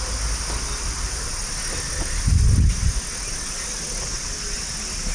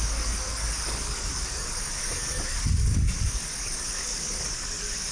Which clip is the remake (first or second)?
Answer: second